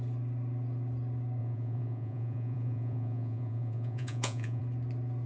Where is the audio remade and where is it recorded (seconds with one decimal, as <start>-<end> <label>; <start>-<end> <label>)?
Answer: 0.0-1.4 recorded; 1.4-4.6 remade; 4.6-5.3 recorded